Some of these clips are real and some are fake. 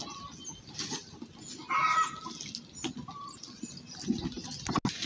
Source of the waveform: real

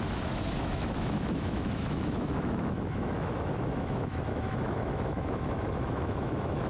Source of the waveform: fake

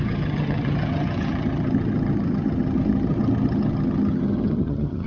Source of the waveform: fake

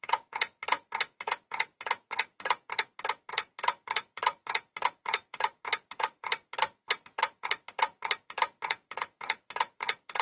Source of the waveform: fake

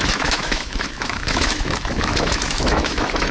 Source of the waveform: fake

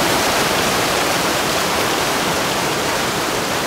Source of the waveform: fake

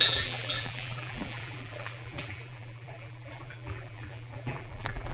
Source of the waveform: fake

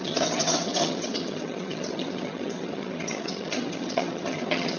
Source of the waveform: fake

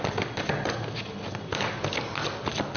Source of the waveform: real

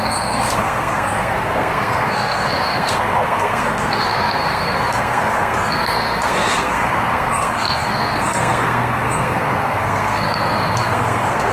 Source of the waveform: fake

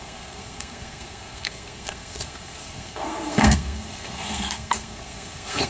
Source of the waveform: fake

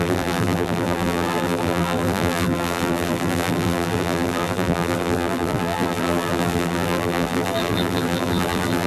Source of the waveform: fake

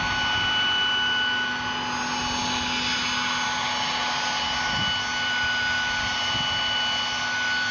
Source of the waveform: real